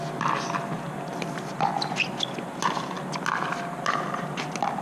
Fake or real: real